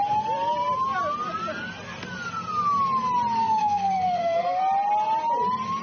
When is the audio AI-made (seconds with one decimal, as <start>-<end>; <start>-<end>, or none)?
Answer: 3.4-4.6